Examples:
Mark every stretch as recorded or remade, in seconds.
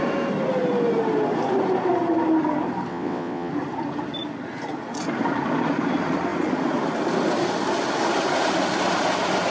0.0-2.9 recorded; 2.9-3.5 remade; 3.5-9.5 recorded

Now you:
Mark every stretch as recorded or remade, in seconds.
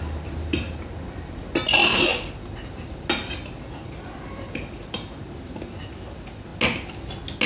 0.0-7.5 recorded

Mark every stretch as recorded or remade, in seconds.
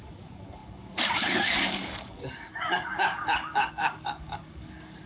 0.0-5.1 remade